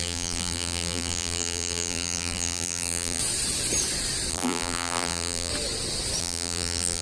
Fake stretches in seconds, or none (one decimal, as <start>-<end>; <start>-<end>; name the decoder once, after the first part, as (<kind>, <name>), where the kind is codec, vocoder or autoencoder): 0.0-3.2 (vocoder, BigVGAN v2); 4.3-5.5; 6.2-7.0